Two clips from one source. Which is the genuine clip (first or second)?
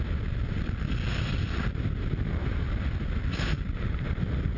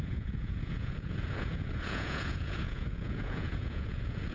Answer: first